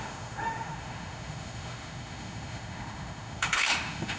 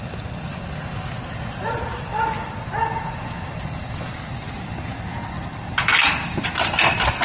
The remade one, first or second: first